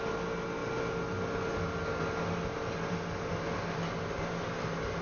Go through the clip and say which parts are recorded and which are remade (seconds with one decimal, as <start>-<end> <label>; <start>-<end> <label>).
0.0-5.0 recorded